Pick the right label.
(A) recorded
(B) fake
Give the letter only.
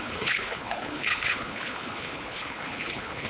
B